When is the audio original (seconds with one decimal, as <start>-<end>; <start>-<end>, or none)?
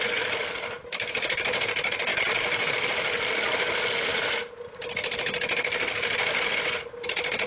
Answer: 0.0-2.1; 2.7-7.5